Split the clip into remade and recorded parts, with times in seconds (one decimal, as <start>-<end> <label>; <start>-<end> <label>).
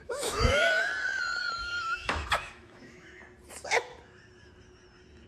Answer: 0.0-0.9 remade; 0.9-1.5 recorded; 1.5-3.2 remade; 3.2-5.3 recorded